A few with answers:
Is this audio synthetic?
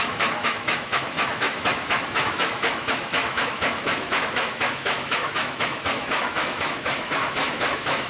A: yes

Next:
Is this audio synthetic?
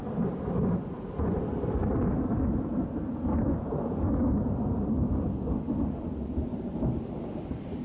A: no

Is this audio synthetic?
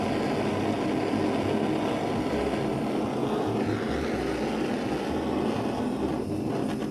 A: no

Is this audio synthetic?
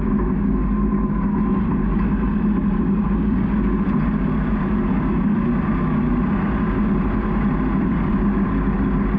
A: no